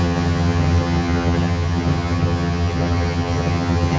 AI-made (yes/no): yes